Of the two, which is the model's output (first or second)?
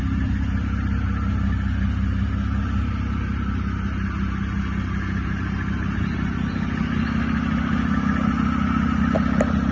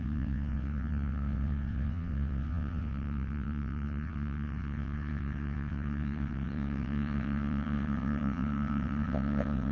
second